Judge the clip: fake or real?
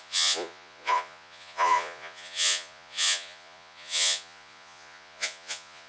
fake